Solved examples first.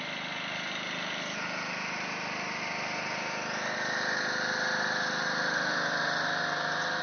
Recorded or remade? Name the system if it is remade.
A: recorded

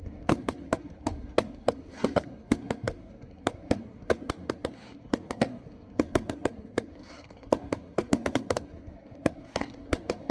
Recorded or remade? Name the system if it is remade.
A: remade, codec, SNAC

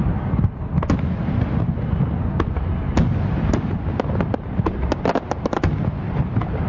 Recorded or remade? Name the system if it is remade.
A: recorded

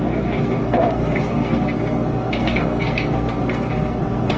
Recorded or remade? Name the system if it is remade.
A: remade, codec, SNAC